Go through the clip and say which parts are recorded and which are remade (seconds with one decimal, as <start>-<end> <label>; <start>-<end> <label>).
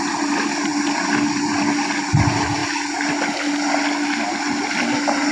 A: 0.0-5.3 recorded